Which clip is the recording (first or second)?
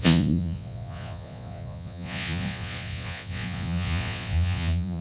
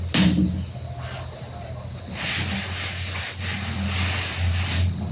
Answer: second